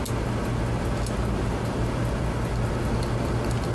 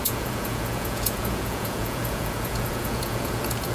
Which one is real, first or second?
first